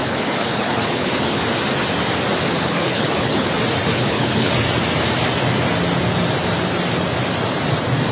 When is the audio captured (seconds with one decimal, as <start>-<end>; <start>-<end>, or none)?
1.4-2.5; 3.5-3.9; 4.5-8.1